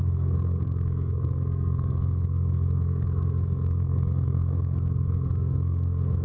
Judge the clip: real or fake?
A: fake